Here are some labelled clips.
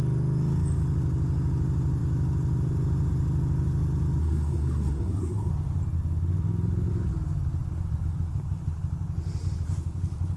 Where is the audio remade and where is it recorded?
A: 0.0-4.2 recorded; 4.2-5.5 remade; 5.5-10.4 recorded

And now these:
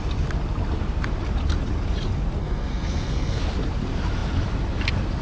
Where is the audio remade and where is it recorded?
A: 0.0-2.4 recorded; 2.4-3.4 remade; 3.4-5.2 recorded

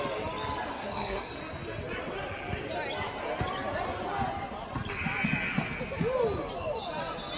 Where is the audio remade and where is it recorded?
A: 0.0-0.7 recorded; 0.7-1.4 remade; 1.4-7.4 recorded

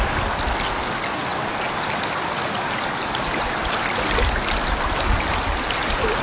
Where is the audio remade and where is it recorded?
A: 0.0-6.2 recorded